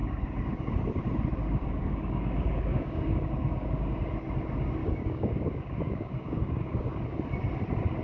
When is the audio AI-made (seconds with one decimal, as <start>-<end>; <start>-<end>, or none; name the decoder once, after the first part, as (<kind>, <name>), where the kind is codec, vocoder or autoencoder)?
0.0-0.7 (codec, DAC); 1.4-4.0; 4.8-7.0

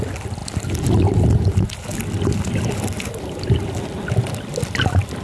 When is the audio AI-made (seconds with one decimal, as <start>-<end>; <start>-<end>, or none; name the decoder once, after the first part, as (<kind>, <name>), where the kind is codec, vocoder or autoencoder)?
0.0-0.4 (vocoder, BigVGAN v2); 3.5-5.2